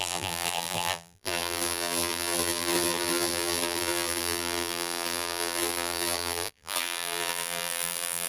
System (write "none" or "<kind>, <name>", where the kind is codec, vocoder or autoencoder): vocoder, BigVGAN v2